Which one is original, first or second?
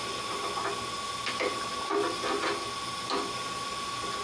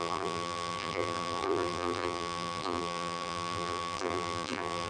first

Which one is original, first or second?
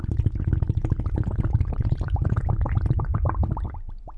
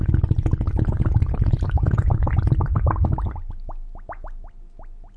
second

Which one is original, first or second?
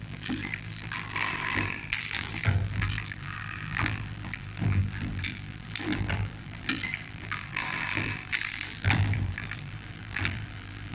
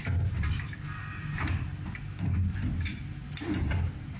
second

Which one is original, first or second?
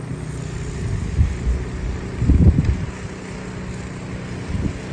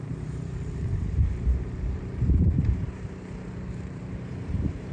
first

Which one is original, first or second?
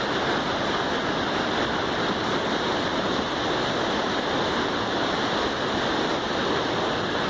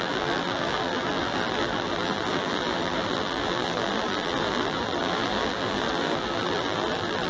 first